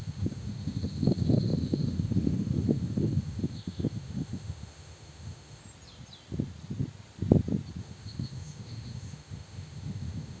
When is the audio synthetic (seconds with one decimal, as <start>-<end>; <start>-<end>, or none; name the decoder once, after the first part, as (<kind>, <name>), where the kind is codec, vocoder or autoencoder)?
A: 0.0-5.6 (autoencoder, DAC-VAE); 7.8-10.4